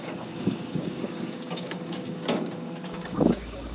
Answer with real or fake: fake